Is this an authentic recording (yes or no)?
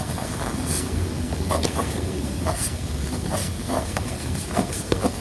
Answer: no